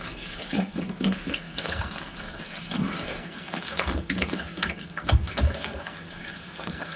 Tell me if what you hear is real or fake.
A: fake